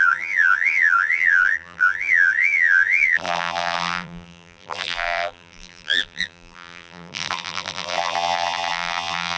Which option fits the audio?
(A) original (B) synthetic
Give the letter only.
B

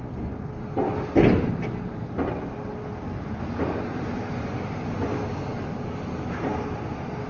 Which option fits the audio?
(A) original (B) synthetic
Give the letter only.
A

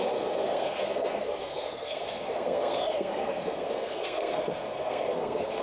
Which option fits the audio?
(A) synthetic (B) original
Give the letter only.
A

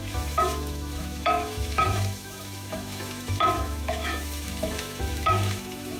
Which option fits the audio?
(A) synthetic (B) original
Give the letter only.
A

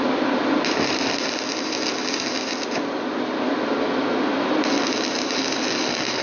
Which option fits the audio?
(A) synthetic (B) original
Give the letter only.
B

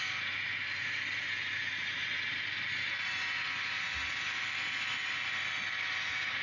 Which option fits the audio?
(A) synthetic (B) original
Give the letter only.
B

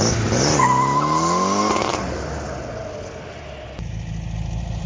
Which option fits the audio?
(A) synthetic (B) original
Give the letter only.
B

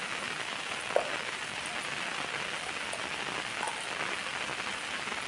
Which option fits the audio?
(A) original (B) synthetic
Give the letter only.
A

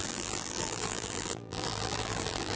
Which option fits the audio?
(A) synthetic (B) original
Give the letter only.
A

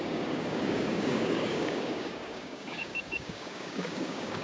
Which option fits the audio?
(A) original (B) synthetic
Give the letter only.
B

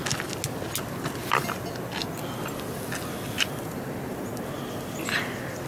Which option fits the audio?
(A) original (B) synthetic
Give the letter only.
A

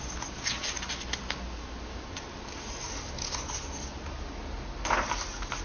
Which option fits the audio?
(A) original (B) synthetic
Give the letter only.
A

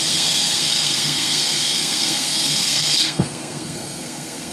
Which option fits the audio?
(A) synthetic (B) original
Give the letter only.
A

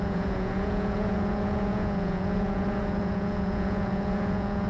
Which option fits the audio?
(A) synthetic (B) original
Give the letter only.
A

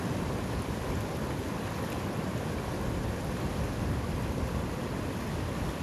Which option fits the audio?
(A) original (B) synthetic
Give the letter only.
A